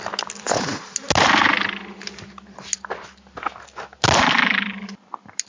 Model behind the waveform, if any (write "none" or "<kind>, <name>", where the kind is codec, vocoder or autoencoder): none